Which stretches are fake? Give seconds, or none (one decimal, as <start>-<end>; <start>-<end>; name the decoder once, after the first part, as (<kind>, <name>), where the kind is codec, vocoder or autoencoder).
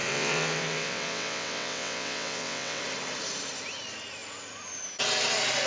0.0-2.8 (vocoder, WaveNeXt)